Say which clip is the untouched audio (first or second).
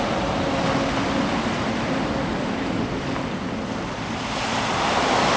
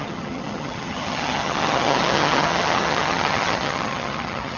first